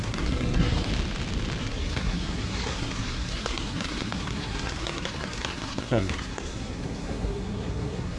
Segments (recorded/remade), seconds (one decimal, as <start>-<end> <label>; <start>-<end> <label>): 0.0-0.9 remade; 0.9-1.6 recorded; 1.6-8.2 remade